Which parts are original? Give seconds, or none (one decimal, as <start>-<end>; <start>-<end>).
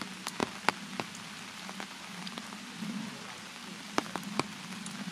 0.0-5.1